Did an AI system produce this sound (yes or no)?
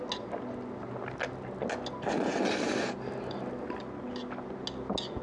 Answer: no